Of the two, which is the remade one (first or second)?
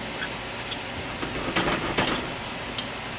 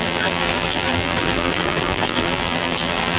second